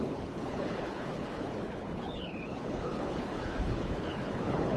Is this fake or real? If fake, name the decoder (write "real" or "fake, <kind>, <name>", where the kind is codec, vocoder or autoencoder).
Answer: fake, codec, HILCodec